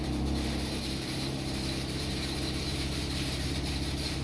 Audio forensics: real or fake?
fake